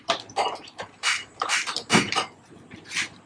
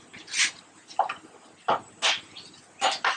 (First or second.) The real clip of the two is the second